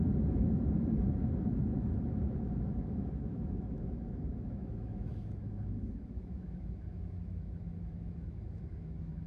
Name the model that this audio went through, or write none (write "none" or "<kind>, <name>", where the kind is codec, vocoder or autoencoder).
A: autoencoder, DAC-VAE